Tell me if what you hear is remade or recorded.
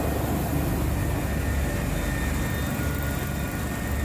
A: recorded